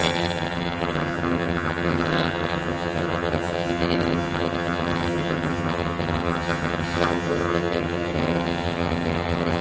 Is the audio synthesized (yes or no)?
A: yes